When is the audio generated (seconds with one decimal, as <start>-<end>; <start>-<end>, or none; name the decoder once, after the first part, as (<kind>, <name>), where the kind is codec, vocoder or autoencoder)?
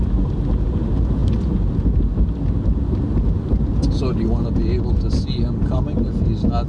none